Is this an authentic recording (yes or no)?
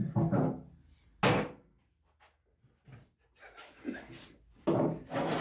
yes